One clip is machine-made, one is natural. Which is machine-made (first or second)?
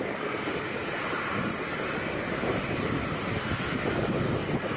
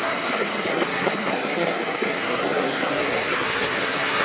second